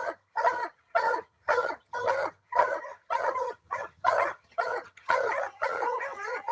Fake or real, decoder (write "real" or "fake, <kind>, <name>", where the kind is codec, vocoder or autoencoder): fake, vocoder, HiFi-GAN